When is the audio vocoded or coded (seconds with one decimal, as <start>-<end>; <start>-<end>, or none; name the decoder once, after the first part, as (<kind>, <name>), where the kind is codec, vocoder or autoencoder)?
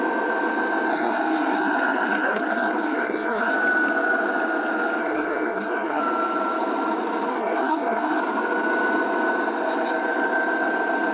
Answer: 0.9-3.5 (codec, SNAC); 5.0-6.0; 7.3-8.2